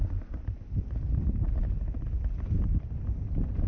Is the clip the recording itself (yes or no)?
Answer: yes